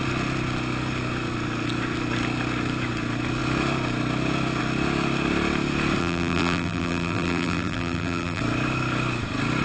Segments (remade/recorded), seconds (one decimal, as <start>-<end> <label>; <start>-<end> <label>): 0.0-6.0 recorded; 6.0-8.4 remade; 8.4-9.6 recorded